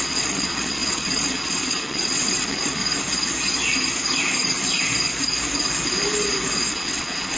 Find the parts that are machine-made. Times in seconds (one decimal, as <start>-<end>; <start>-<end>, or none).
0.0-2.8; 6.7-7.4